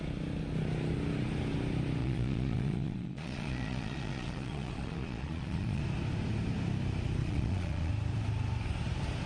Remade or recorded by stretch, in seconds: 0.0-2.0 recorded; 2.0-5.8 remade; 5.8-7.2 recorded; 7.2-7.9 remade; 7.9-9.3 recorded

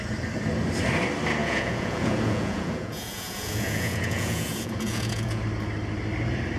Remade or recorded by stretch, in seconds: 0.0-1.4 recorded; 1.4-5.4 remade; 5.4-6.6 recorded

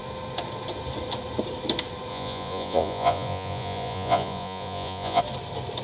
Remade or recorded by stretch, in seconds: 0.0-2.1 recorded; 2.1-5.2 remade; 5.2-5.8 recorded

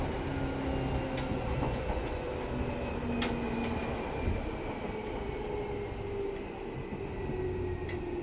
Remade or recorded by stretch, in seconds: 0.0-1.3 recorded; 1.3-2.3 remade; 2.3-8.2 recorded